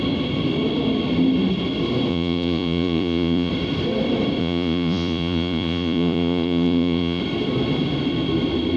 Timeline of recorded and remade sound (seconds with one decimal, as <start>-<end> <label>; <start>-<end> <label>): 0.0-2.1 recorded; 2.1-3.5 remade; 3.5-4.4 recorded; 4.4-7.2 remade; 7.2-8.8 recorded